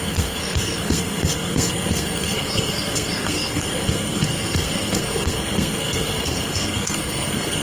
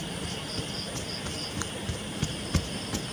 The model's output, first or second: first